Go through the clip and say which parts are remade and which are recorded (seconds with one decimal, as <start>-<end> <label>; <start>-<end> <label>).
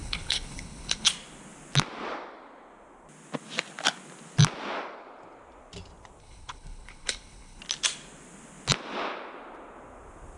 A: 0.0-1.1 remade; 1.1-6.2 recorded; 6.2-7.6 remade; 7.6-10.4 recorded